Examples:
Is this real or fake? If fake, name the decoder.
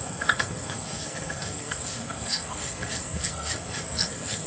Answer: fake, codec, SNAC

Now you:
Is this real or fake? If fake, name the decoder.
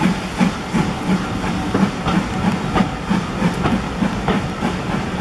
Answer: real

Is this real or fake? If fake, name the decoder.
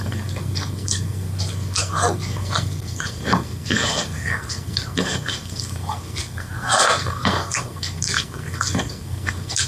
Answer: fake, codec, SNAC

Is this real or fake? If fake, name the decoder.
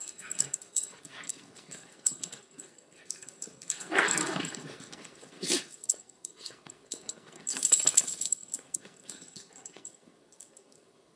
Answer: fake, codec, SNAC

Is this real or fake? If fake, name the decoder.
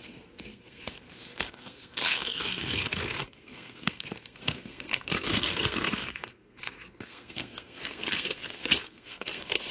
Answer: fake, codec, SNAC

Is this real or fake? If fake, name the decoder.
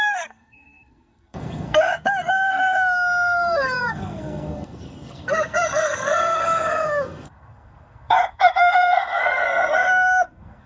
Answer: fake, codec, SNAC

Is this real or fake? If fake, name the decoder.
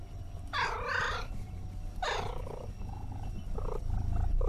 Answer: real